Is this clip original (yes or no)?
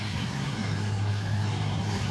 no